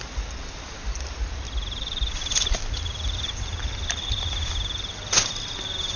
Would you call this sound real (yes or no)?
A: no